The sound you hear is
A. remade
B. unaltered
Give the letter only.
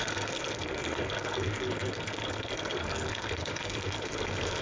A